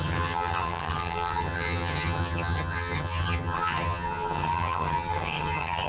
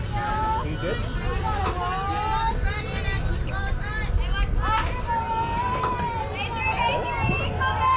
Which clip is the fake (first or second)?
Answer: first